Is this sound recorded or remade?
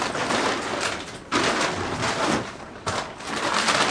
recorded